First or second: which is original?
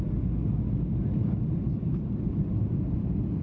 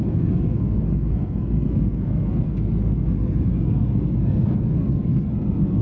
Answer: first